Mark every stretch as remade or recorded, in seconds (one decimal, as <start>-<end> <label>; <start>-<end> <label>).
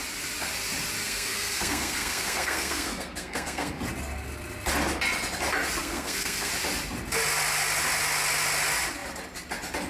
0.0-1.0 recorded; 1.0-3.7 remade; 3.7-5.8 recorded; 5.8-6.5 remade; 6.5-9.9 recorded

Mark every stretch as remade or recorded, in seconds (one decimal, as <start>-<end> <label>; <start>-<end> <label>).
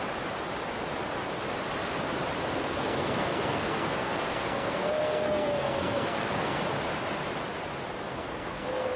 0.0-2.5 recorded; 2.5-6.6 remade; 6.6-8.1 recorded; 8.1-9.0 remade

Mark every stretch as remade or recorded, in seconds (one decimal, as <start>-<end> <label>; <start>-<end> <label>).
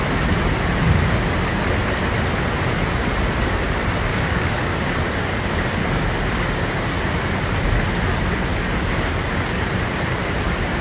0.0-4.1 recorded; 4.1-5.5 remade; 5.5-8.5 recorded; 8.5-9.1 remade; 9.1-10.8 recorded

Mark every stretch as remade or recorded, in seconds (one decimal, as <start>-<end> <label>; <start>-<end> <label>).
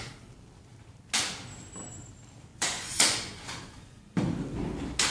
0.0-2.5 recorded; 2.5-4.1 remade; 4.1-5.1 recorded